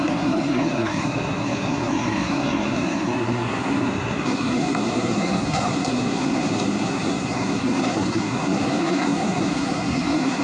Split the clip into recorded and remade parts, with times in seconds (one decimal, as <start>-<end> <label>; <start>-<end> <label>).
0.0-10.4 remade